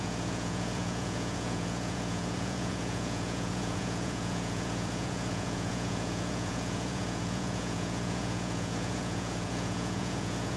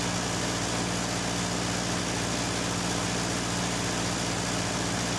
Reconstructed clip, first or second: first